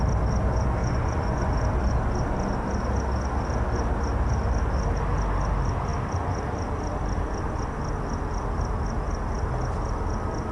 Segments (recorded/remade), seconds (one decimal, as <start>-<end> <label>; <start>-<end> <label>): 0.0-0.8 recorded; 0.8-1.5 remade; 1.5-10.5 recorded